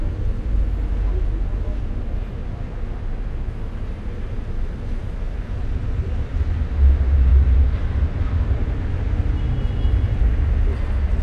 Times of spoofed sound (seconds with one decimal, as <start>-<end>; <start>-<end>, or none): 5.0-6.1; 7.3-8.9